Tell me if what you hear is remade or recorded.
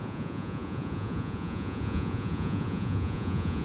remade